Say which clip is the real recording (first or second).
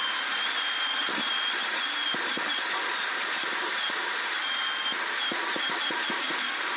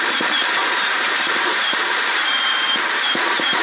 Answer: first